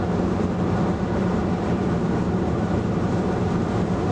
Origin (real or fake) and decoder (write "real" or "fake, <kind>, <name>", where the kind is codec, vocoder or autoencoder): fake, vocoder, BigVGAN v2